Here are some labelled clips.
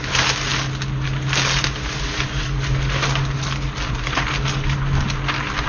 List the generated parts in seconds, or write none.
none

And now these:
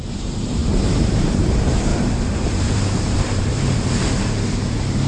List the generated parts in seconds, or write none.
0.0-5.1